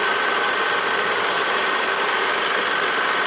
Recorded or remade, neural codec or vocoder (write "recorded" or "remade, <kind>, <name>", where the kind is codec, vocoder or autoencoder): recorded